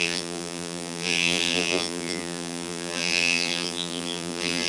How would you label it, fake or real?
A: fake